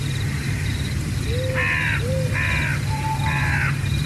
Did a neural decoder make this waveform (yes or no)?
no